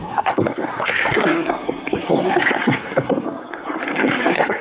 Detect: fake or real fake